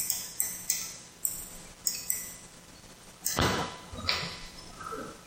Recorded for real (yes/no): yes